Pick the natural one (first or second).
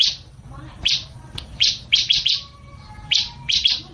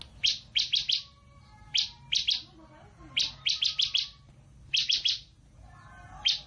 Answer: second